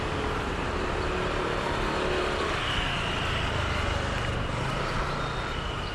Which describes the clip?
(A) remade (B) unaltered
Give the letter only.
B